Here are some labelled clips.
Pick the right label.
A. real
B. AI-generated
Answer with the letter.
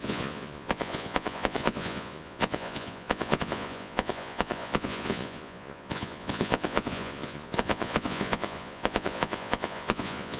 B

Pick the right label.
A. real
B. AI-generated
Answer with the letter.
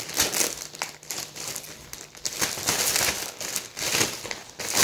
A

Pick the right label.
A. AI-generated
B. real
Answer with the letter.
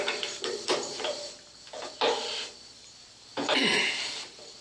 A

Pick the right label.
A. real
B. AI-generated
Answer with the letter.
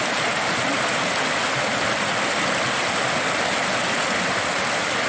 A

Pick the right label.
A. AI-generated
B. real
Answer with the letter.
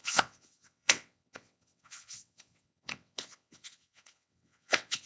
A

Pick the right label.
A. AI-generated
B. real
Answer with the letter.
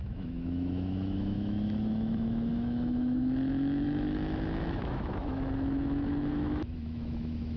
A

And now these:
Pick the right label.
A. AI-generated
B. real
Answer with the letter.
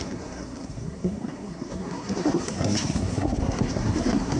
A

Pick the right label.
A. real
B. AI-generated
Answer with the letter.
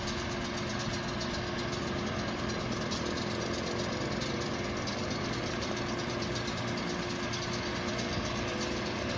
A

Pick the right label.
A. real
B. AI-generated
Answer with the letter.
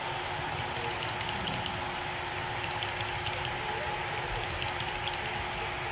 A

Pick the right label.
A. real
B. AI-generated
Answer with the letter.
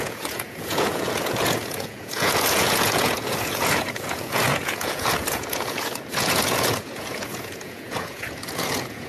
B